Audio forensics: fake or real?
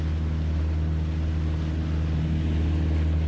real